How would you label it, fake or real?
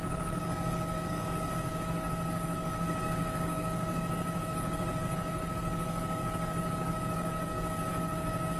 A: fake